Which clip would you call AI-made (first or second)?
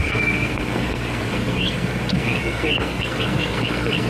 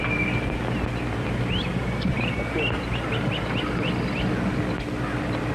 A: first